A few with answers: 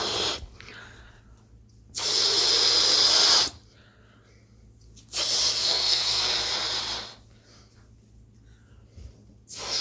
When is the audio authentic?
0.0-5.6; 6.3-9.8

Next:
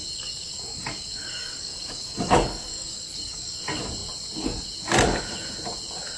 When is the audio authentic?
3.6-6.2